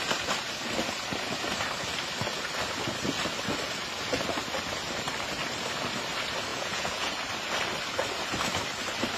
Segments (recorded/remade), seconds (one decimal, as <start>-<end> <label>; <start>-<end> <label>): 0.0-6.5 recorded; 6.5-7.1 remade; 7.1-9.2 recorded